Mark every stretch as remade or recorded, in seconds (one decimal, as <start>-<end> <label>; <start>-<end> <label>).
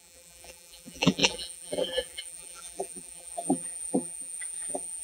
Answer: 0.0-5.0 remade